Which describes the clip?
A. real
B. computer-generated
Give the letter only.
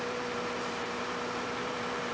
B